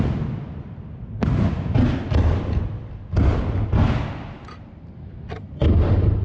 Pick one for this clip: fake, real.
real